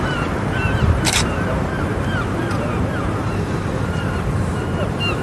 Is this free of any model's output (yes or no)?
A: no